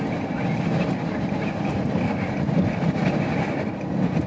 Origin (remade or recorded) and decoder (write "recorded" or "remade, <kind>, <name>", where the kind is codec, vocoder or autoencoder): recorded